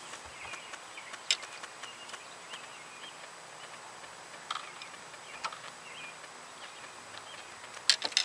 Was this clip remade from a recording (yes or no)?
no